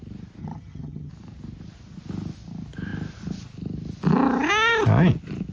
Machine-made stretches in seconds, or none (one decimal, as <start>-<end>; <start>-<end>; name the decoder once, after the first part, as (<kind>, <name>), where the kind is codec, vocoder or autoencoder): 0.4-1.1 (vocoder, HiFi-GAN)